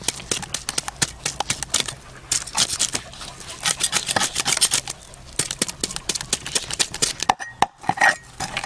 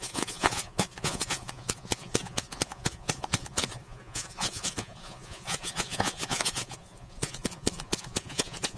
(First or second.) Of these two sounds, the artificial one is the second